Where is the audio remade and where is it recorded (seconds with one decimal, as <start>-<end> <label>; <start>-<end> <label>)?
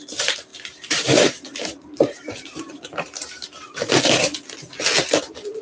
0.0-0.5 recorded; 0.5-3.9 remade; 3.9-5.6 recorded